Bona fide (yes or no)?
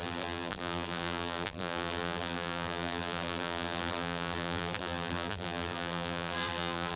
no